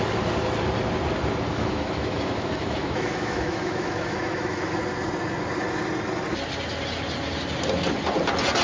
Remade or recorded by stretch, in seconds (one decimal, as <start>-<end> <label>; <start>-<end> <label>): 0.0-1.5 recorded; 1.5-4.8 remade; 4.8-8.6 recorded